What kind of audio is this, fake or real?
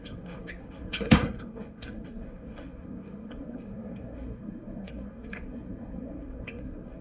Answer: fake